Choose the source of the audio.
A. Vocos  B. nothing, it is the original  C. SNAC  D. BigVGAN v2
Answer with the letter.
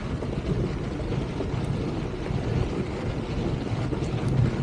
B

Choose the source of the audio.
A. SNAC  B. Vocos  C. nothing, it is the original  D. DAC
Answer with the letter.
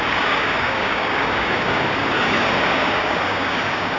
D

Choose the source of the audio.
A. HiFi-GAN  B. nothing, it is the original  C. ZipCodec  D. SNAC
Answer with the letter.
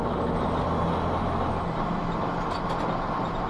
B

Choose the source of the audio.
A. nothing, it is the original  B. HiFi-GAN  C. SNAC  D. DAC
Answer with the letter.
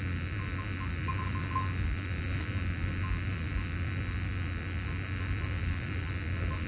A